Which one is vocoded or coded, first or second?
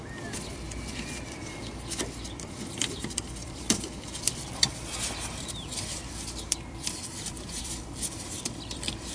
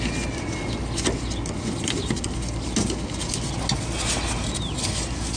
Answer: first